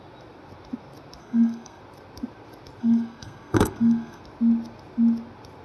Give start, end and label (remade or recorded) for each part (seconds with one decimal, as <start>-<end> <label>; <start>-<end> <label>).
0.0-1.2 recorded; 1.2-1.8 remade; 1.8-2.8 recorded; 2.8-4.2 remade; 4.2-5.6 recorded